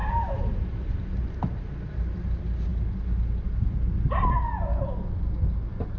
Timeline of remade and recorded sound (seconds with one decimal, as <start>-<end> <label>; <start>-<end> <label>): 0.0-1.7 remade; 1.7-6.0 recorded